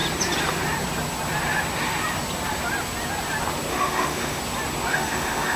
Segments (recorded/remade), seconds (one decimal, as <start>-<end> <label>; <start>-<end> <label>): 0.0-3.7 recorded; 3.7-4.4 remade; 4.4-4.9 recorded; 4.9-5.6 remade